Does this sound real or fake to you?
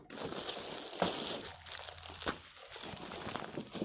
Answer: real